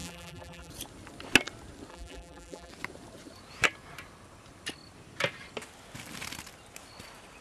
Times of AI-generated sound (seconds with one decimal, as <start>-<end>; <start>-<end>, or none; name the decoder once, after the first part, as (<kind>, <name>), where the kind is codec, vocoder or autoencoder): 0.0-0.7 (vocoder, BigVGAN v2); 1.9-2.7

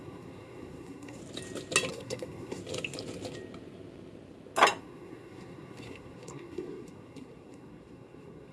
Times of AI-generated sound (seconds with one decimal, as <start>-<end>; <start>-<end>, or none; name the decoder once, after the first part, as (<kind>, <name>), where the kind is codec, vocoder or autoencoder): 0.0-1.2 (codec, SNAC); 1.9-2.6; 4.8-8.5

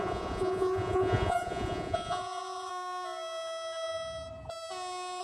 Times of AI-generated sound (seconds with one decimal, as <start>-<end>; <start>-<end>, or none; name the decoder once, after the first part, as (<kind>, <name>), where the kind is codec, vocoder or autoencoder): 0.0-2.7 (vocoder, Vocos)

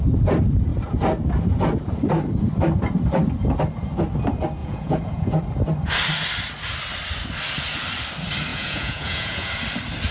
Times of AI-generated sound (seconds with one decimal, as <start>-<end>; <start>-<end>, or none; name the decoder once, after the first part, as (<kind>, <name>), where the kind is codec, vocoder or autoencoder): 4.6-5.4 (vocoder, Vocos); 8.5-9.5